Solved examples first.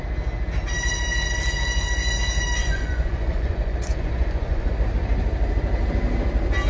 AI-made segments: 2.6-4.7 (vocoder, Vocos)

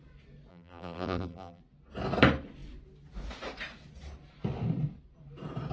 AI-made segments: 0.5-1.6 (vocoder, BigVGAN v2)

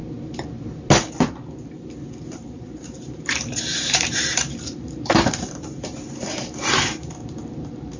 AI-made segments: 2.2-8.0 (vocoder, BigVGAN v2)

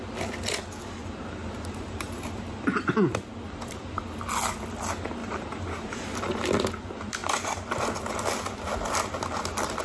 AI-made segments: 1.0-3.1 (vocoder, BigVGAN v2); 5.2-6.4

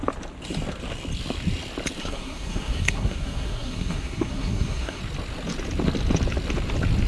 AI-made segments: 2.0-5.0 (codec, SNAC)